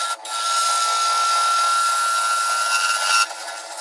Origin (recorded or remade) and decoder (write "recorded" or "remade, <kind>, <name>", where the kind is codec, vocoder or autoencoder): recorded